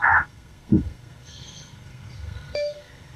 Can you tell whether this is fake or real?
fake